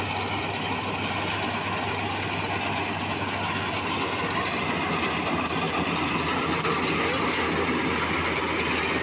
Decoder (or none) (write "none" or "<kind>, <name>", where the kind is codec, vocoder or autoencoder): none